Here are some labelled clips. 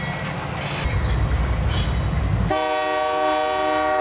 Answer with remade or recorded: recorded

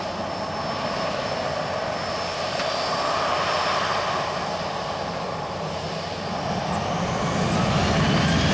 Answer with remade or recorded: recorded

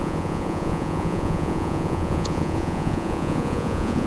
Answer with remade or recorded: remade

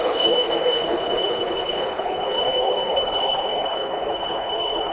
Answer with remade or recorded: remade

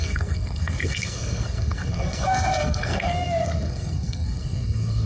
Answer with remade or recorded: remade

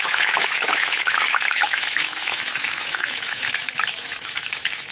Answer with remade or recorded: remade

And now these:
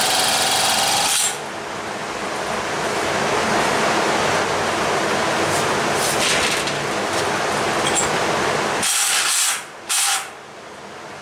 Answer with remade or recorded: recorded